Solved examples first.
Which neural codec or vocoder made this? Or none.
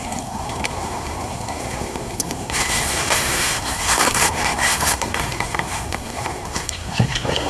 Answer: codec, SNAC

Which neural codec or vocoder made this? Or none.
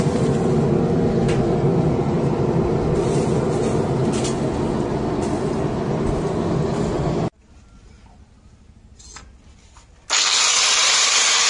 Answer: none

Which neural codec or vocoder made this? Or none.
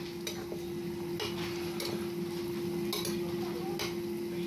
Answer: none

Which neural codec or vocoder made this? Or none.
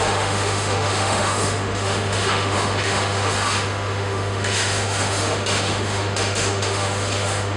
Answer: autoencoder, DAC-VAE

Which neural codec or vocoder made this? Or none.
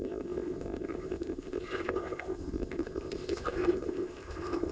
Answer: codec, ZipCodec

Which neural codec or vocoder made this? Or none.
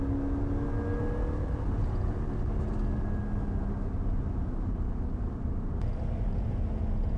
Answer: none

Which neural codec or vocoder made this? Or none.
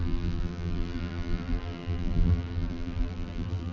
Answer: vocoder, BigVGAN v2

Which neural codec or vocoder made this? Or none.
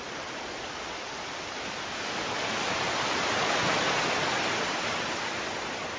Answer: none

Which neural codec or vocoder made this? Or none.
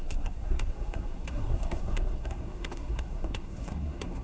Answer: codec, SNAC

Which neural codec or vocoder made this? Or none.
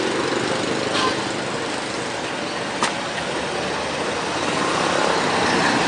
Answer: none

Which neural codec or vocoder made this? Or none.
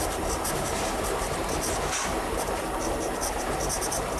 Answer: none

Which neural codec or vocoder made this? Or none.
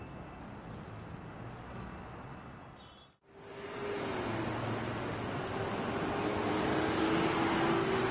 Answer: none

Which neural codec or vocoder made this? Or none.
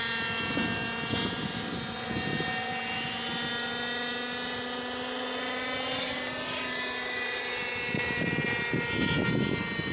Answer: none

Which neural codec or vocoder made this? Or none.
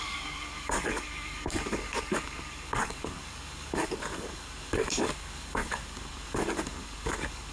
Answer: codec, DAC